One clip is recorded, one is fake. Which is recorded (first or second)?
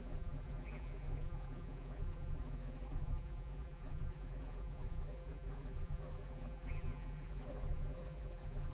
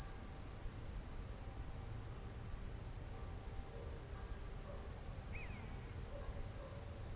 second